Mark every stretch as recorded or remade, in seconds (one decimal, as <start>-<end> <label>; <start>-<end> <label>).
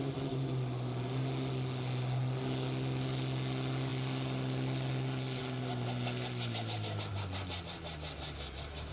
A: 0.0-8.9 recorded